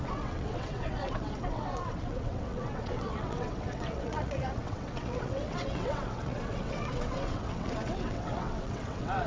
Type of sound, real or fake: fake